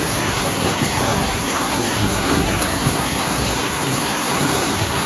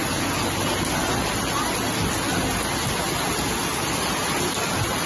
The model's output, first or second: first